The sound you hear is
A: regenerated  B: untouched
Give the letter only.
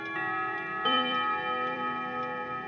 A